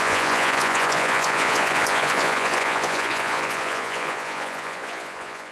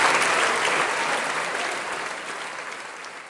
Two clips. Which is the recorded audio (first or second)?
second